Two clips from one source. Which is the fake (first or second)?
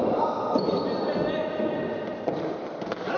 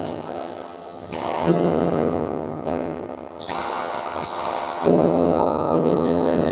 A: second